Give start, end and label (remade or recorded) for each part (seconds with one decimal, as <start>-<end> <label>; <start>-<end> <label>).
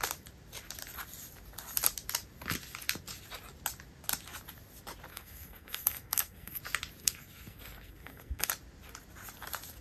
0.0-5.1 recorded; 5.1-6.6 remade; 6.6-7.0 recorded; 7.0-8.5 remade; 8.5-9.8 recorded